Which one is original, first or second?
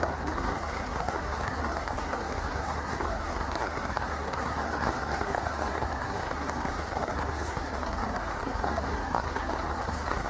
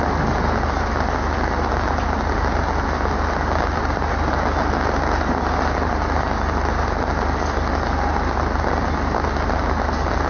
second